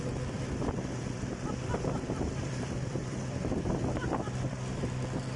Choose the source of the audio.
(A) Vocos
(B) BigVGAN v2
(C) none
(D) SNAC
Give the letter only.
B